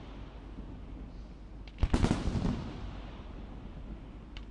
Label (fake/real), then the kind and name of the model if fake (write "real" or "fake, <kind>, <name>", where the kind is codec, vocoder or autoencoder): real